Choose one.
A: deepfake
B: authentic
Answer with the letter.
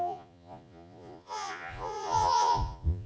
A